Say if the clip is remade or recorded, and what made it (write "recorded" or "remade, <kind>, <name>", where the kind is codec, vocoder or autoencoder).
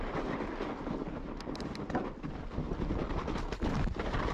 recorded